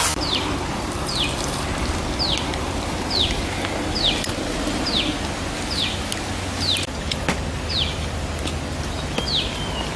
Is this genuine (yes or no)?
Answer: yes